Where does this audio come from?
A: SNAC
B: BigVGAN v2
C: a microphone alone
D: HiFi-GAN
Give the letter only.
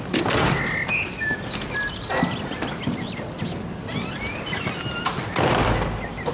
C